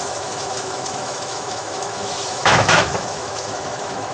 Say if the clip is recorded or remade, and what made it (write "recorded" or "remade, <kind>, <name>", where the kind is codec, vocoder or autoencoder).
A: remade, autoencoder, DAC-VAE